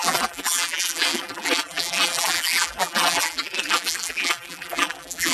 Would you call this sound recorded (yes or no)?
no